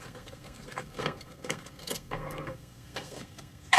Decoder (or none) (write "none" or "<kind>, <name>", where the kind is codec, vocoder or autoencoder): codec, SNAC